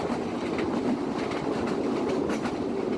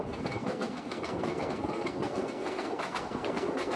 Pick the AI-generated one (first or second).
second